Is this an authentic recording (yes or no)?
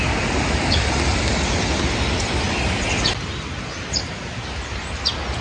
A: yes